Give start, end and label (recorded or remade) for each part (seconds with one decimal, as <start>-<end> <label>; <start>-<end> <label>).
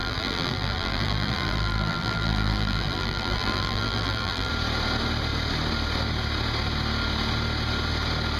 0.0-4.5 remade; 4.5-8.4 recorded